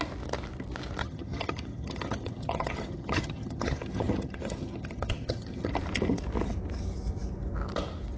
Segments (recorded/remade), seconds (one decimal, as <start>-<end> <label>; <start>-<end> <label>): 0.0-1.0 recorded; 1.0-5.7 remade; 5.7-8.2 recorded